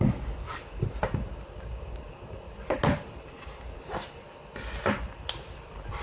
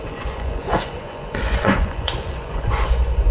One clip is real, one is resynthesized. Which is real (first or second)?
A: first